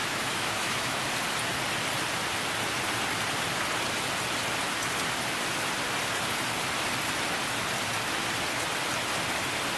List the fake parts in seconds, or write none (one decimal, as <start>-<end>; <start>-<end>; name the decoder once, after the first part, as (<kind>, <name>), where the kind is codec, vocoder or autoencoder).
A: 0.0-1.0 (autoencoder, DAC-VAE)